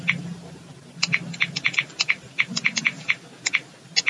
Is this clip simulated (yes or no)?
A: no